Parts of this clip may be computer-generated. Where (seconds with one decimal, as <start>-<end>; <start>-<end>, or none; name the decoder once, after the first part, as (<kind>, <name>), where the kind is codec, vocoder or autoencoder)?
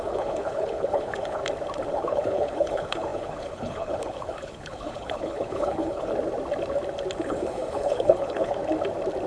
0.0-1.4 (codec, HILCodec); 1.9-6.1; 7.2-8.6